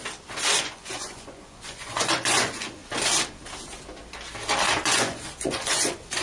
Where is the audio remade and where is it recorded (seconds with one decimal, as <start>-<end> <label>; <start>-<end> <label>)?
0.0-0.6 recorded; 0.6-2.8 remade; 2.8-4.7 recorded; 4.7-6.2 remade